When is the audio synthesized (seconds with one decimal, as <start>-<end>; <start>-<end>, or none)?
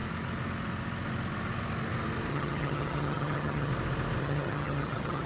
2.3-3.7; 4.2-5.3